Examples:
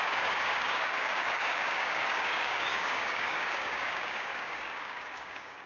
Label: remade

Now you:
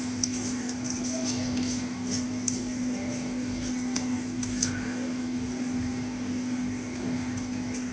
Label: remade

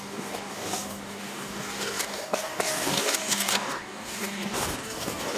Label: remade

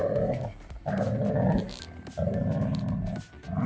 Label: recorded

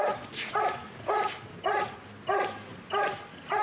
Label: recorded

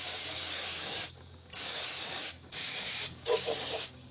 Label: remade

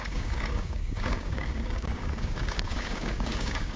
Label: remade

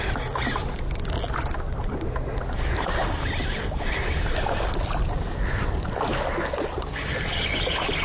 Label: recorded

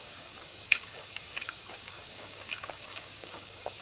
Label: remade